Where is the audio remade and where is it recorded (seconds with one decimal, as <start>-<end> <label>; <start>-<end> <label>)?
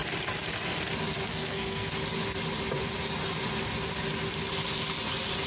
0.0-1.3 recorded; 1.3-1.9 remade; 1.9-5.5 recorded